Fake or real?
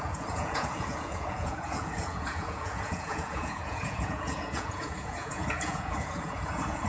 fake